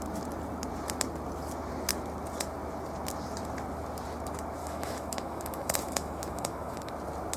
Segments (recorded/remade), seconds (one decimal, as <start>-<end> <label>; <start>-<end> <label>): 0.0-4.6 recorded; 4.6-6.9 remade; 6.9-7.4 recorded